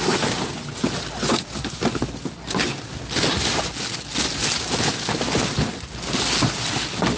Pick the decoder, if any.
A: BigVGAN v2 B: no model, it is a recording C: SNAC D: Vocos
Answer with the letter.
B